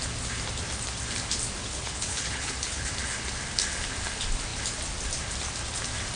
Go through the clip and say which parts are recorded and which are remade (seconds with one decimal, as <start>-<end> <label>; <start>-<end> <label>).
0.0-1.6 recorded; 1.6-2.9 remade; 2.9-6.2 recorded